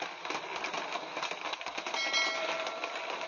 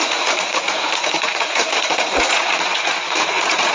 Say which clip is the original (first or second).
first